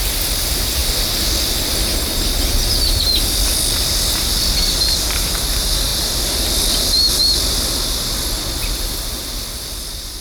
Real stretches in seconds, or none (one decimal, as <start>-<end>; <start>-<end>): 0.0-10.2